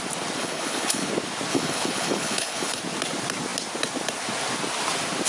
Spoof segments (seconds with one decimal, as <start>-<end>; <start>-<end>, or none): 0.4-1.1; 1.5-2.8